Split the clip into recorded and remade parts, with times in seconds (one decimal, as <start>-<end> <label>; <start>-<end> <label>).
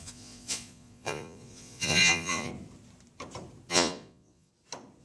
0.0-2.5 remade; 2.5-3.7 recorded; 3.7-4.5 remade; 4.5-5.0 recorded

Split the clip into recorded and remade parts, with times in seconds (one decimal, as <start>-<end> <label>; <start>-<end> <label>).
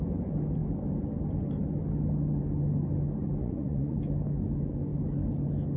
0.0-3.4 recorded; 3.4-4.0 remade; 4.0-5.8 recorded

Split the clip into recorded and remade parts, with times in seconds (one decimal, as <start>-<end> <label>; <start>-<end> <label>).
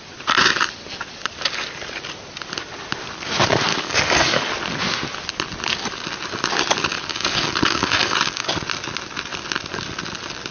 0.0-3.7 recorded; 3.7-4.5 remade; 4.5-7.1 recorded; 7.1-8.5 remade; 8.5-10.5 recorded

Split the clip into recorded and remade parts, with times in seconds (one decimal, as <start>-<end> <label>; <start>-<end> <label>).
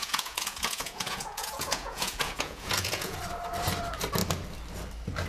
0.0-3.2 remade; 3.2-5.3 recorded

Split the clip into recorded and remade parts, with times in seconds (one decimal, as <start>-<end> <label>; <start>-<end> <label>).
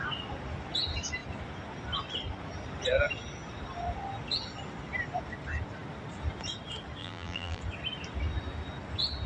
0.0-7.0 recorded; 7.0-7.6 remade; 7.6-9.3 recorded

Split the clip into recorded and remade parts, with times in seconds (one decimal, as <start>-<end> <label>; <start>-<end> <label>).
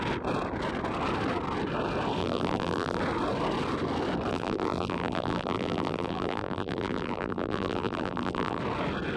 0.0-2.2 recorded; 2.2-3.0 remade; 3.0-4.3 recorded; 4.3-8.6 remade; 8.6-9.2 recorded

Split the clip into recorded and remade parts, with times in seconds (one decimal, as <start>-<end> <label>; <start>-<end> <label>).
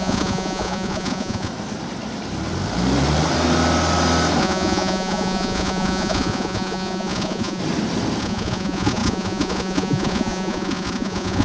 0.0-1.5 remade; 1.5-4.4 recorded; 4.4-7.6 remade; 7.6-8.2 recorded; 8.2-11.4 remade